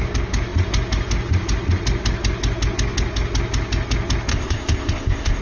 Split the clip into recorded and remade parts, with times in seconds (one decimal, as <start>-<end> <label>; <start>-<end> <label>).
0.0-4.3 recorded; 4.3-5.4 remade